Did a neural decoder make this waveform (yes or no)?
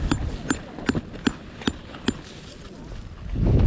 no